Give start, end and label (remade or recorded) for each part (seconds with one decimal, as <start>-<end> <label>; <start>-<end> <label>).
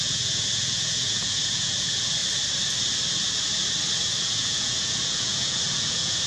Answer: 0.0-2.2 remade; 2.2-4.2 recorded; 4.2-6.3 remade